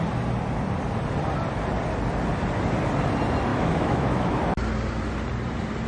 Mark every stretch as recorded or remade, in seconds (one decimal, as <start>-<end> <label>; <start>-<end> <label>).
0.0-3.5 recorded; 3.5-4.4 remade; 4.4-5.9 recorded